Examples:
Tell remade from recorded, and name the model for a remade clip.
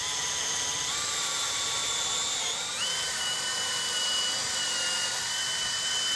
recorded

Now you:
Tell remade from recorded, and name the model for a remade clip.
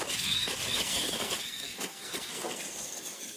remade, codec, SNAC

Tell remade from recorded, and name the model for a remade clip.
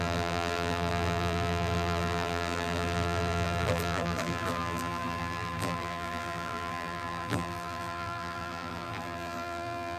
remade, vocoder, BigVGAN v2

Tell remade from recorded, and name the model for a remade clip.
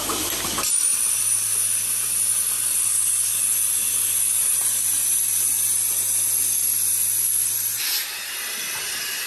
recorded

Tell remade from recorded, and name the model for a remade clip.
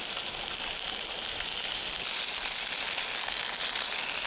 recorded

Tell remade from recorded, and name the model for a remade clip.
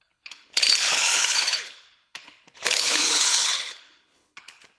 remade, codec, HILCodec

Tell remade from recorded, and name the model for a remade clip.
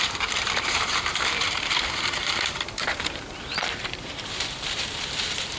remade, vocoder, BigVGAN v2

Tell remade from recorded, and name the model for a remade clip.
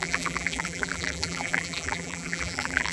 remade, vocoder, BigVGAN v2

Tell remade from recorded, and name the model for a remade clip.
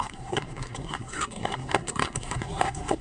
remade, codec, SNAC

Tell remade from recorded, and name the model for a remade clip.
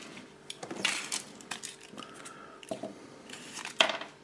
remade, vocoder, BigVGAN v2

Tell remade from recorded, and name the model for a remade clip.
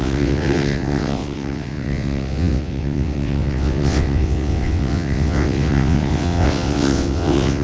remade, vocoder, WaveNeXt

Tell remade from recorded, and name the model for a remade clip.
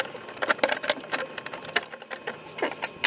recorded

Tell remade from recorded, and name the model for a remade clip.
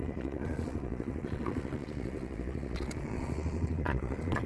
remade, vocoder, Vocos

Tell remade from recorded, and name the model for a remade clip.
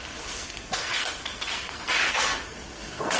remade, codec, SNAC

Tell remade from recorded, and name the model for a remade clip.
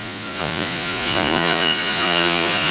remade, vocoder, Vocos